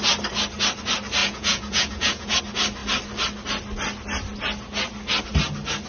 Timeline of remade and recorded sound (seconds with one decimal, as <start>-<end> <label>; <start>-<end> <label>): 0.0-1.2 recorded; 1.2-2.4 remade; 2.4-5.9 recorded